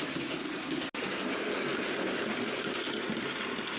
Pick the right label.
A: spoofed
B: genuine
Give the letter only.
B